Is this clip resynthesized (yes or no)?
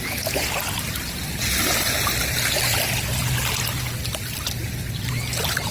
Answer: no